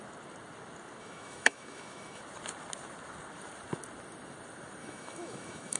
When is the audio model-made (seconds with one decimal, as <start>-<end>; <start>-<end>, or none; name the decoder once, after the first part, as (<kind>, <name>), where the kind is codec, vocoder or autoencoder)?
1.0-2.2 (autoencoder, DAC-VAE); 4.8-5.8